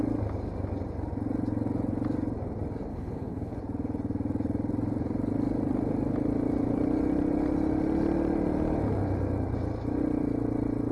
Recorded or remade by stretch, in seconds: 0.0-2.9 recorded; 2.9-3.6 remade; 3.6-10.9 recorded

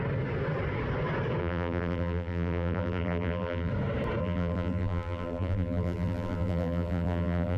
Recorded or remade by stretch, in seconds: 0.0-1.4 recorded; 1.4-3.7 remade; 3.7-4.2 recorded; 4.2-7.6 remade

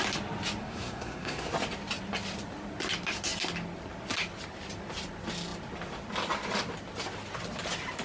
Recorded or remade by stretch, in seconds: 0.0-0.6 recorded; 0.6-1.5 remade; 1.5-8.0 recorded

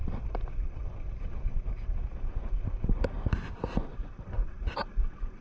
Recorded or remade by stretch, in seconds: 0.0-3.9 remade; 3.9-4.5 recorded; 4.5-5.4 remade

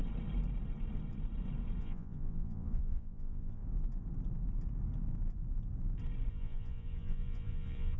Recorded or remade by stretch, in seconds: 0.0-1.8 recorded; 1.8-3.6 remade; 3.6-6.3 recorded; 6.3-8.0 remade